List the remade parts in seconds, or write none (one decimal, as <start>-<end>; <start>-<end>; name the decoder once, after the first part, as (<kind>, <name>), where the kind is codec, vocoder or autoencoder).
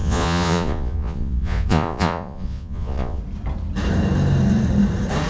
0.0-3.2 (vocoder, Vocos)